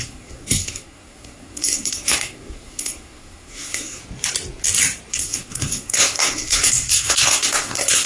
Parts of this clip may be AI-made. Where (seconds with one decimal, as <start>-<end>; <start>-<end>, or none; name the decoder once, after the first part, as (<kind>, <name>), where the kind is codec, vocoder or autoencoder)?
0.0-4.0 (codec, SNAC); 5.1-8.1